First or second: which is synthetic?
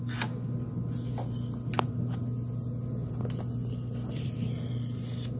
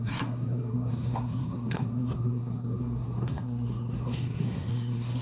second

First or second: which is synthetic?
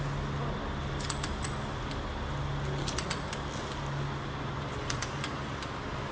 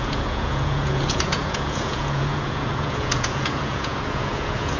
second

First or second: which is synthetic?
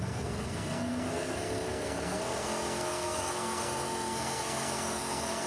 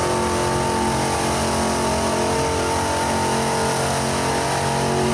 first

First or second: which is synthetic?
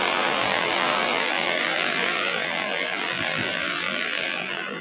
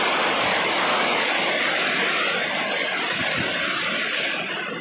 first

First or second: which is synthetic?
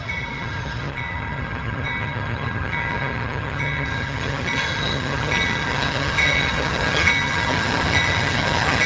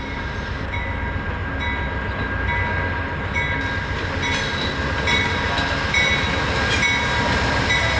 first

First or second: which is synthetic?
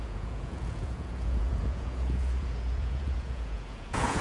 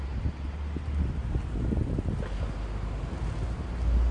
first